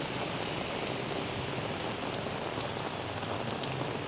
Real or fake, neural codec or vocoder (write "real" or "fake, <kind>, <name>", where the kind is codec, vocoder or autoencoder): real